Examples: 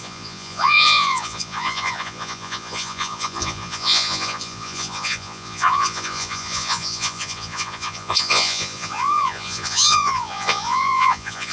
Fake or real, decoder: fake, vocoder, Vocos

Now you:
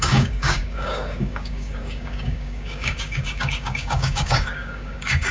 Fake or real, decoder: fake, codec, DAC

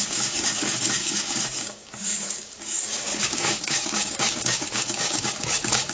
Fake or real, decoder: fake, codec, DAC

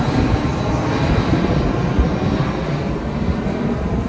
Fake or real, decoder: real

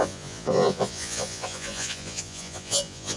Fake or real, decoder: fake, vocoder, Vocos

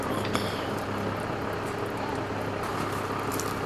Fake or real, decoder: real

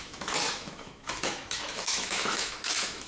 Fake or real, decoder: fake, autoencoder, DAC-VAE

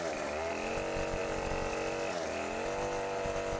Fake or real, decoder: real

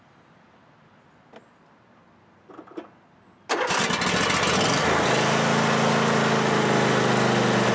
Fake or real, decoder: real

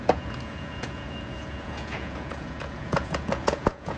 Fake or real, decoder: fake, vocoder, Vocos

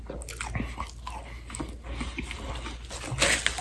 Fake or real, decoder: real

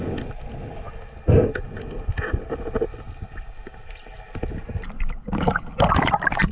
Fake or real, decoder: real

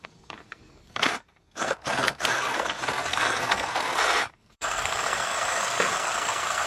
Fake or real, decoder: fake, codec, SNAC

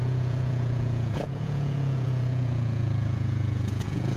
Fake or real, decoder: fake, vocoder, Vocos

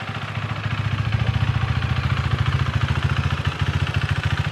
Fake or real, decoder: real